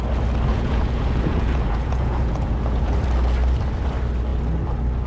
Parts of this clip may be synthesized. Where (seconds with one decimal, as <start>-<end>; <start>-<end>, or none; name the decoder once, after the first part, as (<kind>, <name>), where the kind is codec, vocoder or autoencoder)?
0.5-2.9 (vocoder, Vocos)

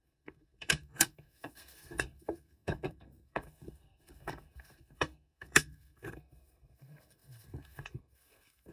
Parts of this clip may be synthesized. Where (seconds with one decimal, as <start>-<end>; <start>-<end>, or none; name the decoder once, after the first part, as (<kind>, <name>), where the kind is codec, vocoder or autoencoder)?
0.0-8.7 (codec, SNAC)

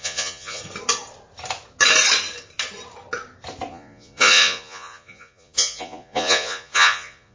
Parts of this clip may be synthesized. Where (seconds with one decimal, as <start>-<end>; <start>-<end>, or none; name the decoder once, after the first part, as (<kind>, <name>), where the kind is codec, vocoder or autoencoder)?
0.0-0.6 (vocoder, Vocos); 3.7-7.3